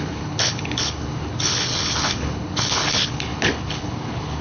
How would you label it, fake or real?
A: fake